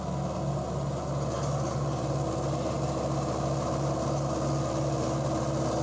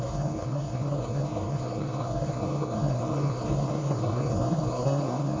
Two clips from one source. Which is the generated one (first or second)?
second